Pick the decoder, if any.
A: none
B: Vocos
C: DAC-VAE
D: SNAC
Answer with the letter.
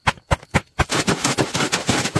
A